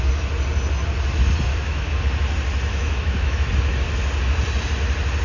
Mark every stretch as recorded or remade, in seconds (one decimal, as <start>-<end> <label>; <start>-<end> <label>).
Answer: 0.0-1.5 recorded; 1.5-2.0 remade; 2.0-2.7 recorded; 2.7-3.5 remade; 3.5-5.2 recorded